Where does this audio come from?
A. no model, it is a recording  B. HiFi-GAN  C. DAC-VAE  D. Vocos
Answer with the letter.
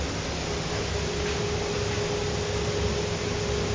A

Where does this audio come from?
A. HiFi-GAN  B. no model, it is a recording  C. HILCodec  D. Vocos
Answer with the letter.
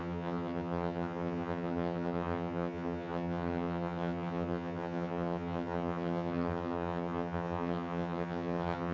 A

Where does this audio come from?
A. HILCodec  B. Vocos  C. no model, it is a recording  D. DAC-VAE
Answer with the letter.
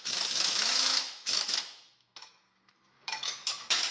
D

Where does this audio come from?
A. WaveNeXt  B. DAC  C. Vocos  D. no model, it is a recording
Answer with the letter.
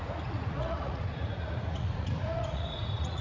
C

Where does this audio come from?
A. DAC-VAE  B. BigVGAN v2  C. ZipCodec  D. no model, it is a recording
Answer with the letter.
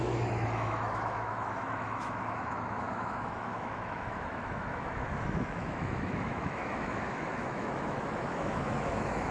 A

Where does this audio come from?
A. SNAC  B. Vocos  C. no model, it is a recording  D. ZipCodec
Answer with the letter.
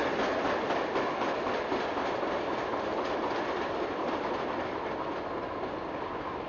C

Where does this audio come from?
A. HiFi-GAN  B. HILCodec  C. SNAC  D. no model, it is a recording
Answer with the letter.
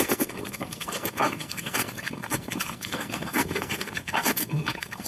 C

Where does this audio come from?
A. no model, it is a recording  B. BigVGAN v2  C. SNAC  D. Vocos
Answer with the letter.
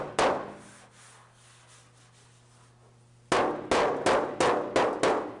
A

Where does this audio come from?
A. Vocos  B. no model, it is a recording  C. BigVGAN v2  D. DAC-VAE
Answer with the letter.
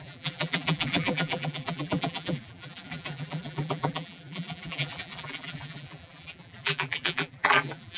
C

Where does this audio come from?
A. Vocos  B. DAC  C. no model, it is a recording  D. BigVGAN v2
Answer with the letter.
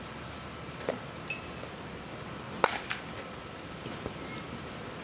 C